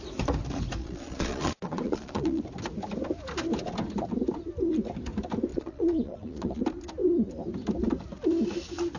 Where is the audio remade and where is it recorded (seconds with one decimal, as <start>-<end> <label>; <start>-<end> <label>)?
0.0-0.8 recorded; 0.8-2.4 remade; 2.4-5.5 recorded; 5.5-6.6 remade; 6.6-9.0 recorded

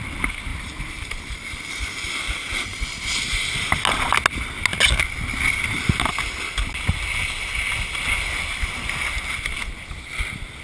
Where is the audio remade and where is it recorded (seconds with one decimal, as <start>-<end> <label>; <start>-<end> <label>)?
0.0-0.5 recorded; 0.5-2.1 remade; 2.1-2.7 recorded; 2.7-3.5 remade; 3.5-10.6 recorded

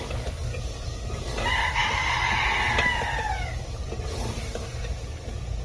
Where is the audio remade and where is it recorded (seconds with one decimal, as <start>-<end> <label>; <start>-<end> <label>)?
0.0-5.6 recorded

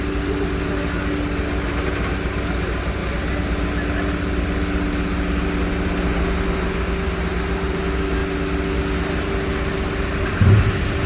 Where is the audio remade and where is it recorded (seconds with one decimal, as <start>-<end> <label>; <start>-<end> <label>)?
0.0-11.1 recorded

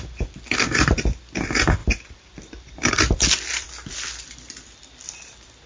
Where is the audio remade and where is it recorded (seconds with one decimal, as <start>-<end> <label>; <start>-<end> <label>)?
0.0-1.8 recorded; 1.8-2.9 remade; 2.9-3.5 recorded; 3.5-4.5 remade; 4.5-5.7 recorded